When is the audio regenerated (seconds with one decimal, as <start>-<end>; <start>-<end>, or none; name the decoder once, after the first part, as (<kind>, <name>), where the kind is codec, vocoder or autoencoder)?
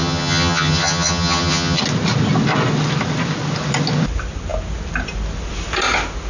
0.0-1.8 (vocoder, HiFi-GAN)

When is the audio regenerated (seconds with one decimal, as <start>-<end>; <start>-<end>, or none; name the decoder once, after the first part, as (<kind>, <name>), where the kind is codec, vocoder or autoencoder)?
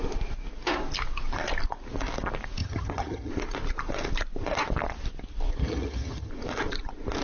2.6-3.3 (vocoder, HiFi-GAN); 5.6-6.3